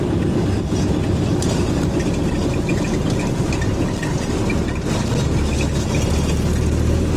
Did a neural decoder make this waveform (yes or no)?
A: no